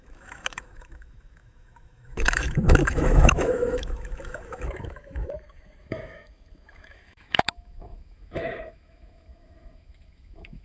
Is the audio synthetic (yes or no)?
yes